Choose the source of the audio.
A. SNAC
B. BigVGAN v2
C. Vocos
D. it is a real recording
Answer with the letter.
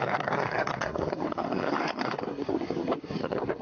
A